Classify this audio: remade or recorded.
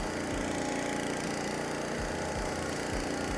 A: recorded